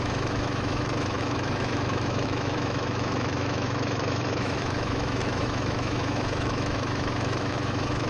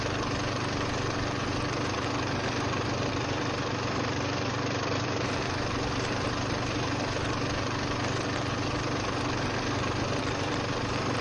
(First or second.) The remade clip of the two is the first